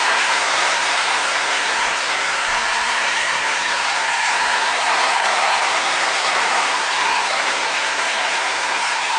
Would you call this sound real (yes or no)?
no